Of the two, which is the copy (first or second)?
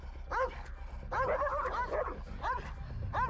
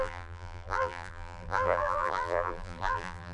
second